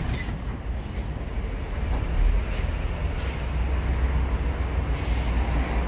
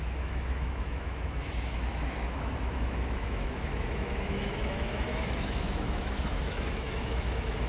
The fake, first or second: second